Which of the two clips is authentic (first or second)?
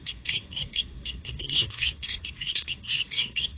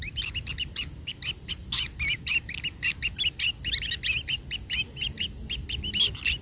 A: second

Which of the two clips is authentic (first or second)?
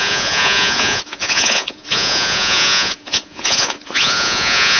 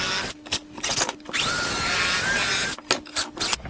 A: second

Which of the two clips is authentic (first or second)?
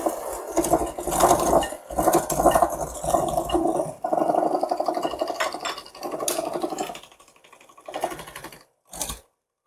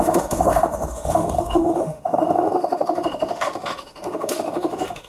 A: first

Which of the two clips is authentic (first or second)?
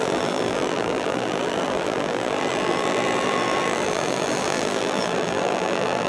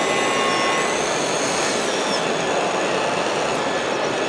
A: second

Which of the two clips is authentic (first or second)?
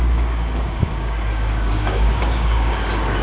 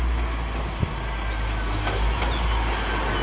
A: second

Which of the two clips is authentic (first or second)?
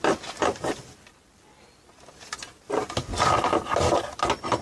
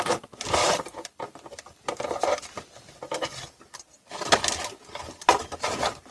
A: first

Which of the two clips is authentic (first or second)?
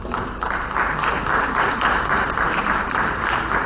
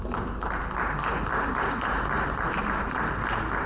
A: second